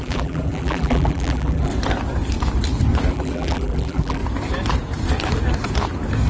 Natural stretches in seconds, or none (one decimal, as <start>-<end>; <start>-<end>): 1.7-3.1; 4.2-6.3